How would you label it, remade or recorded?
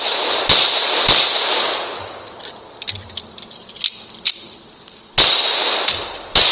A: recorded